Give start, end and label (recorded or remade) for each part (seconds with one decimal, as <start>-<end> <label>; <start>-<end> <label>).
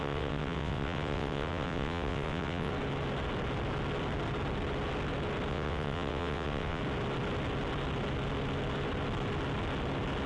0.0-2.7 remade; 2.7-5.5 recorded; 5.5-6.8 remade; 6.8-10.3 recorded